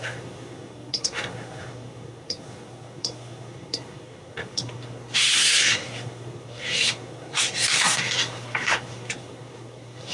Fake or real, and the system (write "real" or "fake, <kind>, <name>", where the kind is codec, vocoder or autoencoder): fake, codec, SNAC